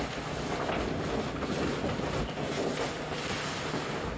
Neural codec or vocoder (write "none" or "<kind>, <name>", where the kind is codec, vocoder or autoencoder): none